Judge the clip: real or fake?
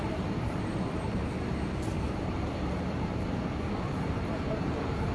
fake